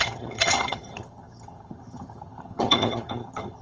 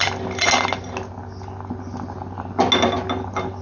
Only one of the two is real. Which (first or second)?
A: second